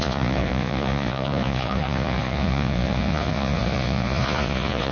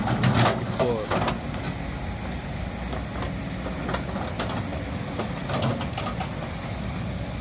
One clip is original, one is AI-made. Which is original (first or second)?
second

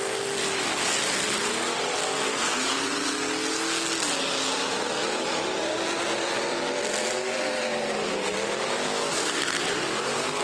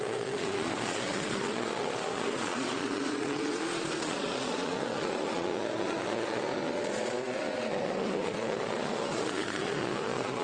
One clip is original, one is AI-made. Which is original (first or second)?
first